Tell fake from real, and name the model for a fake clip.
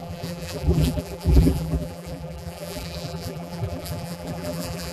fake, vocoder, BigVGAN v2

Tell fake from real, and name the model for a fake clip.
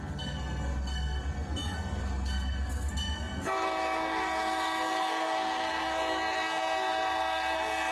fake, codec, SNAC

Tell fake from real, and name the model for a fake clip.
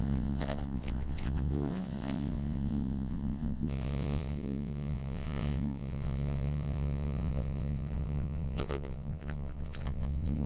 fake, vocoder, WaveNeXt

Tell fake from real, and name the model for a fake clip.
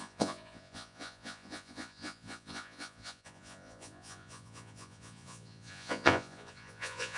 fake, vocoder, Vocos